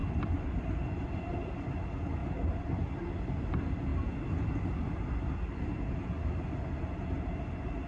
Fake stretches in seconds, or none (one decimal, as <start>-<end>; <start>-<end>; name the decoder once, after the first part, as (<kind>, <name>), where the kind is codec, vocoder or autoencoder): none